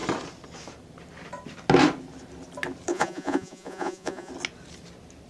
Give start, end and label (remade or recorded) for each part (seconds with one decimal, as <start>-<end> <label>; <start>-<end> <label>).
0.0-2.9 recorded; 2.9-4.3 remade; 4.3-5.3 recorded